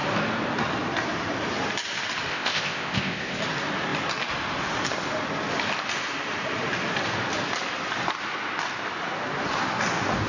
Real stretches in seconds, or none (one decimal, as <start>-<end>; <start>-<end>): 0.0-2.3; 3.4-10.3